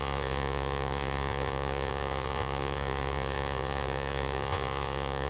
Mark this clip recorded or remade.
remade